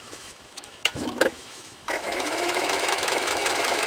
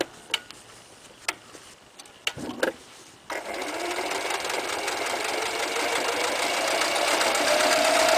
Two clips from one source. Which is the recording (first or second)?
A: second